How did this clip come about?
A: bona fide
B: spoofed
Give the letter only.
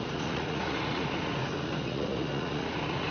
B